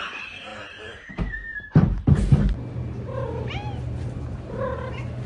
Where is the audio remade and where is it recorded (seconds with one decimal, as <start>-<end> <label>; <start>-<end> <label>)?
0.0-0.5 recorded; 0.5-1.1 remade; 1.1-5.3 recorded